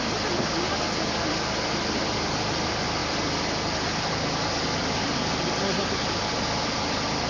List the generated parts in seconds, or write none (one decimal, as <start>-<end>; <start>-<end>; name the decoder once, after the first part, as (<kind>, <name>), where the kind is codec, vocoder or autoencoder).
none